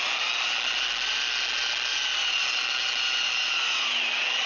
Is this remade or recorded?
recorded